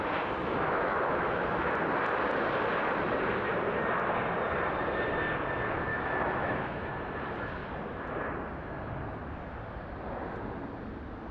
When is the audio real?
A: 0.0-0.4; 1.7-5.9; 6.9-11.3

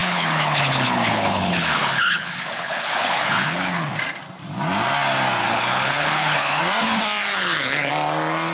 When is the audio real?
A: 3.9-5.4; 6.6-7.2; 7.9-8.5

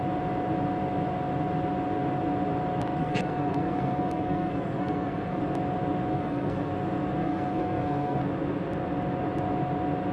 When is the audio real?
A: 0.0-3.0; 5.4-6.1; 6.7-7.2; 8.2-10.1

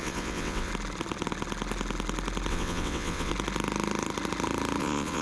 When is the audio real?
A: 0.7-2.5; 3.3-4.8

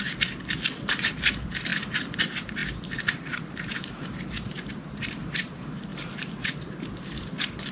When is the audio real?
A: none

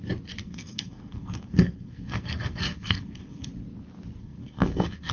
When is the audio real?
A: 0.0-0.4; 3.5-4.2